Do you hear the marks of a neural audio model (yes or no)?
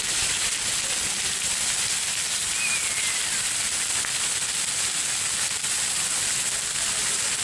no